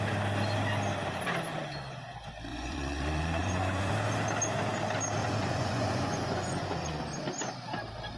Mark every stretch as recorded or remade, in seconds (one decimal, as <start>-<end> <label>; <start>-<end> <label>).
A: 0.0-2.5 recorded; 2.5-3.9 remade; 3.9-5.2 recorded; 5.2-7.0 remade; 7.0-8.2 recorded